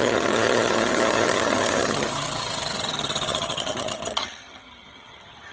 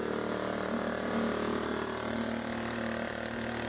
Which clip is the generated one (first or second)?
first